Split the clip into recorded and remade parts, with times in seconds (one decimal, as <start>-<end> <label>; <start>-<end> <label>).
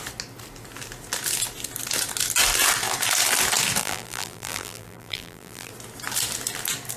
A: 0.0-3.8 recorded; 3.8-5.7 remade; 5.7-7.0 recorded